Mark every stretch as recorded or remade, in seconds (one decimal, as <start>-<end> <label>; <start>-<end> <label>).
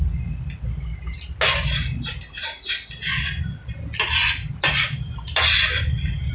0.0-6.3 recorded